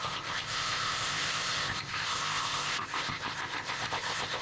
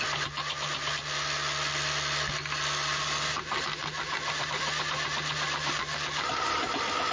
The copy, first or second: first